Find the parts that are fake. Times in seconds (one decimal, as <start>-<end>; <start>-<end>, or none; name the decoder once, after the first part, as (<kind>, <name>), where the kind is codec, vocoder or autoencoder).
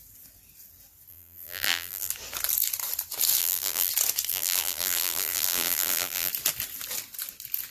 1.1-2.1 (vocoder, BigVGAN v2); 3.4-3.9; 4.3-6.3